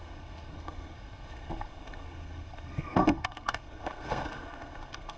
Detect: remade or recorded remade